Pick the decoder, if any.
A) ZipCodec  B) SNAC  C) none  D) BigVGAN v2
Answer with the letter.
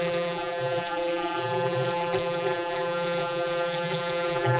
D